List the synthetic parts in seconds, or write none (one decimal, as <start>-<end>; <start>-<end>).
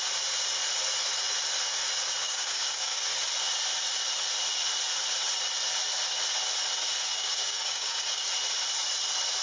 2.2-3.1; 7.1-8.3